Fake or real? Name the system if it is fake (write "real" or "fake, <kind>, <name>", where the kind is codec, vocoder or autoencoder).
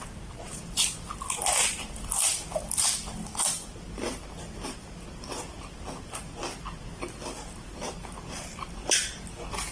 real